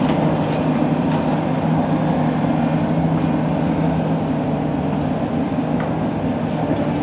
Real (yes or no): yes